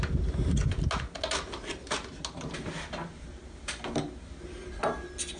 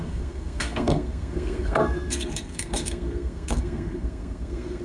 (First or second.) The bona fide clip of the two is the first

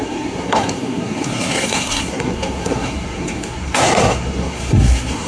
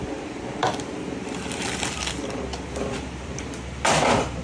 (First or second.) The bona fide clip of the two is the second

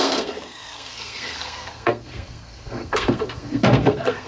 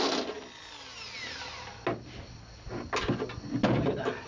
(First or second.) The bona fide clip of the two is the second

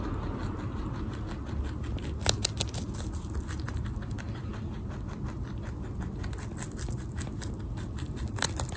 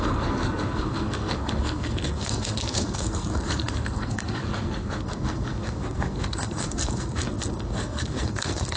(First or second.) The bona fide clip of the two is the first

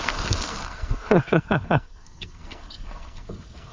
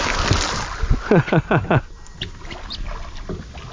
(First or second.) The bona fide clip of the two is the second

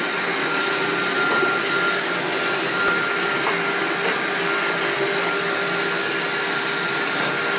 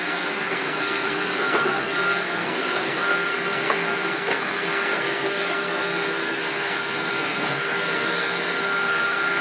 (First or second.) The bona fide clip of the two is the first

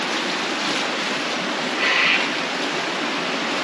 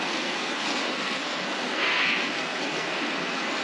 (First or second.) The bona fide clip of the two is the first